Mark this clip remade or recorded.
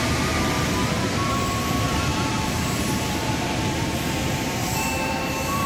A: remade